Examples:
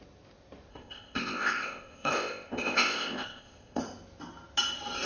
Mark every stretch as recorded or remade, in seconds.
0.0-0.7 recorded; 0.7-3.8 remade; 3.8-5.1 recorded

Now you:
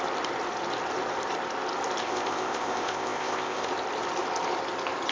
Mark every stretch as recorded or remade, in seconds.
0.0-2.0 recorded; 2.0-3.7 remade; 3.7-5.1 recorded

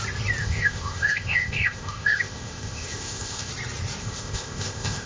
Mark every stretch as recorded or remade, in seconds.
0.0-0.4 recorded; 0.4-3.5 remade; 3.5-4.0 recorded; 4.0-5.1 remade

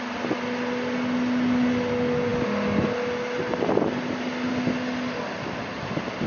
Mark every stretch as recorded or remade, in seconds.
0.0-6.3 recorded

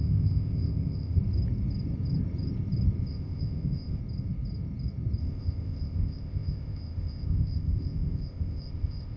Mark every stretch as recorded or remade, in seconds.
0.0-1.2 remade; 1.2-3.1 recorded; 3.1-4.0 remade; 4.0-5.2 recorded; 5.2-9.2 remade

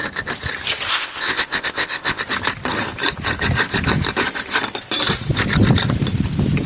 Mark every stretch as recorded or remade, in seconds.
0.0-0.9 recorded; 0.9-2.2 remade; 2.2-6.7 recorded

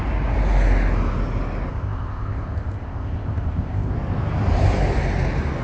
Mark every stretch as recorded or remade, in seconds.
0.0-1.7 recorded; 1.7-3.9 remade; 3.9-5.6 recorded